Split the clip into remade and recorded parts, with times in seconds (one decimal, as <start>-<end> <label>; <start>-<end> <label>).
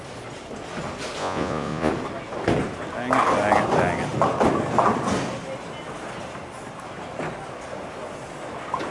0.0-1.2 recorded; 1.2-1.9 remade; 1.9-8.9 recorded